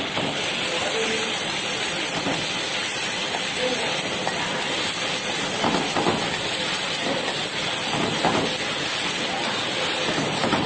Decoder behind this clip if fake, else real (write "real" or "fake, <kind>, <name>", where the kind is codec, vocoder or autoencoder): real